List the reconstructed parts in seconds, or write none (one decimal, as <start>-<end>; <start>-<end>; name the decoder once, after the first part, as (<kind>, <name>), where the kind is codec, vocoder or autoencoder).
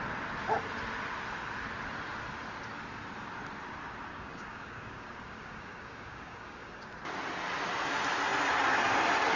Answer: 4.1-6.9 (codec, DAC)